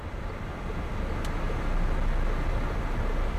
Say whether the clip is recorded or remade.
recorded